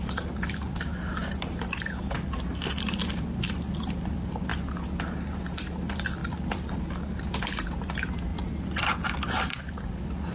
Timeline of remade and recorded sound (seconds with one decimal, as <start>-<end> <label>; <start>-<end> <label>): 0.0-1.2 recorded; 1.2-2.0 remade; 2.0-6.2 recorded; 6.2-6.7 remade; 6.7-8.3 recorded; 8.3-9.0 remade; 9.0-10.3 recorded